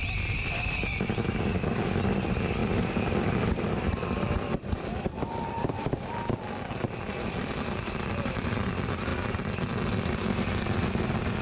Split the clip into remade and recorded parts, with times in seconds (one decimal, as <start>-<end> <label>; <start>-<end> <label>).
0.0-9.1 remade; 9.1-11.4 recorded